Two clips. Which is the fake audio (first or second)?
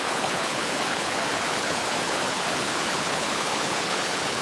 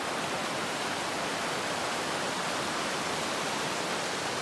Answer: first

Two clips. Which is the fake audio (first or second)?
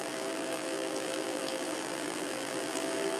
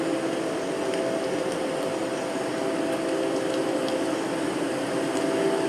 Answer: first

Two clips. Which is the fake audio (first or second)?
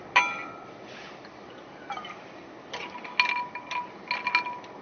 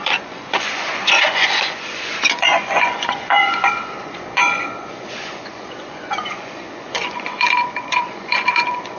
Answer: second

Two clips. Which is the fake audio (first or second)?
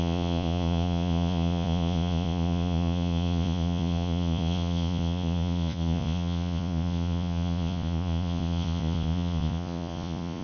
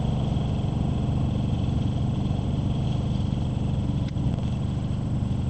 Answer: first